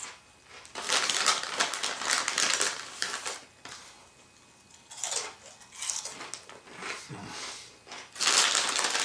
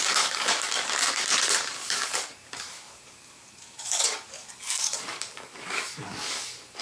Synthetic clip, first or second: second